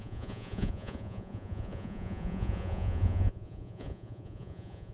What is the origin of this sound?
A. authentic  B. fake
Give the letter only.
B